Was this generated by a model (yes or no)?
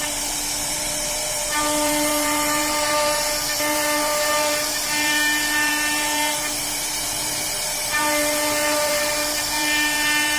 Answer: yes